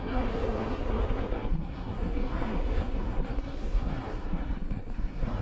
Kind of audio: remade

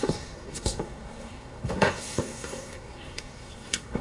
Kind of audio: remade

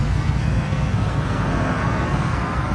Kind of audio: remade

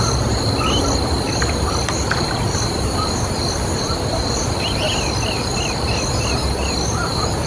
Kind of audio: recorded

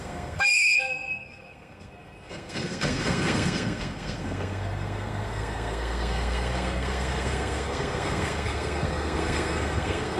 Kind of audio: remade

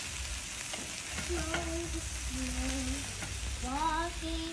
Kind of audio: recorded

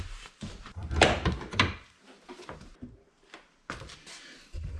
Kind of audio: recorded